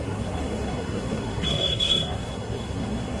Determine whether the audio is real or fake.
fake